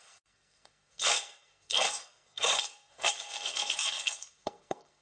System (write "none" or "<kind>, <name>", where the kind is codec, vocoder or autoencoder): codec, SNAC